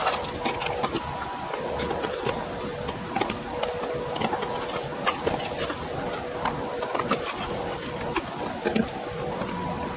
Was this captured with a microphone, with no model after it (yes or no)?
yes